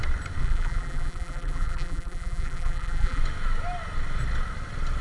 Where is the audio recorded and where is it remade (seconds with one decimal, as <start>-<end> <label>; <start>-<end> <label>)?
0.0-0.4 recorded; 0.4-3.2 remade; 3.2-5.0 recorded